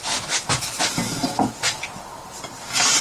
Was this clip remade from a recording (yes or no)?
no